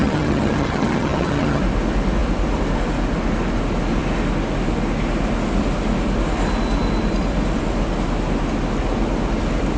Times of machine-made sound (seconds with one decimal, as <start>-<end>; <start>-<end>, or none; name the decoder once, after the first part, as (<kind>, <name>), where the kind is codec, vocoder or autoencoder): 0.0-1.6 (vocoder, HiFi-GAN)